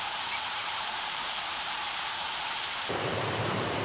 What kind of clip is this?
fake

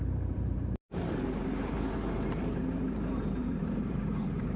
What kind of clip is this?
fake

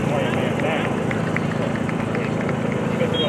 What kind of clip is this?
real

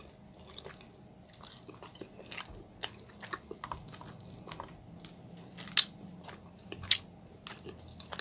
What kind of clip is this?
real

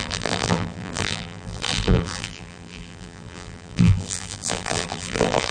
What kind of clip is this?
fake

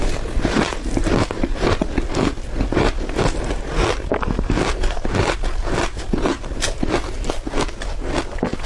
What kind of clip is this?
real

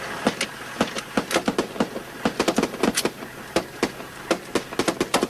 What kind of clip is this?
real